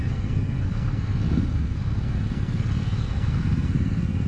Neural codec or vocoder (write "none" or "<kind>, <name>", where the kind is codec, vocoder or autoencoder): codec, SNAC